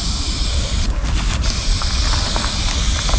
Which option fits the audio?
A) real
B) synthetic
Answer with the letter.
A